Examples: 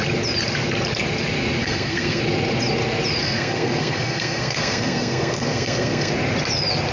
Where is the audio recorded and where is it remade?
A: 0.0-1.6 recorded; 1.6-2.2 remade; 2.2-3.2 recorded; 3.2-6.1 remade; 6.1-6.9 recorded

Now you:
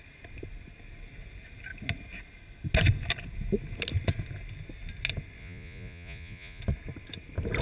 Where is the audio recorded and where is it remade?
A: 0.0-5.4 recorded; 5.4-6.6 remade; 6.6-7.6 recorded

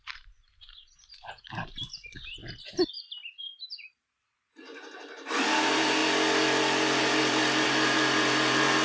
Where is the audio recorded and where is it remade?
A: 0.0-2.4 remade; 2.4-2.9 recorded; 2.9-6.0 remade; 6.0-7.0 recorded; 7.0-8.8 remade

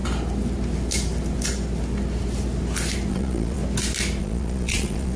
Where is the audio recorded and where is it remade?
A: 0.0-3.1 recorded; 3.1-3.6 remade; 3.6-4.2 recorded; 4.2-5.2 remade

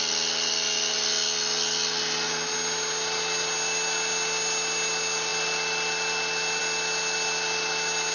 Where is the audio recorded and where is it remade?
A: 0.0-8.1 recorded